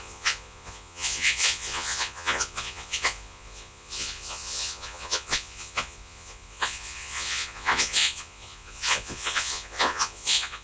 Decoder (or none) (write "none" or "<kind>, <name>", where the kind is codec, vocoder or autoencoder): vocoder, Vocos